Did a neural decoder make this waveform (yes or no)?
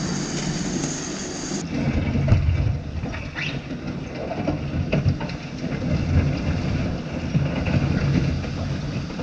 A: no